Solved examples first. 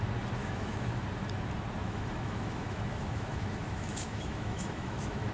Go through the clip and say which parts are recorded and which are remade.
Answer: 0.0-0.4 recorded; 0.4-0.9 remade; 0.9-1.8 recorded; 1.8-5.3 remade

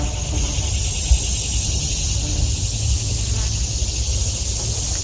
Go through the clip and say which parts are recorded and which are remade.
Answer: 0.0-5.0 recorded